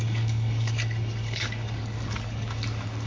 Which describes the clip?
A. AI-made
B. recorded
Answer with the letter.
A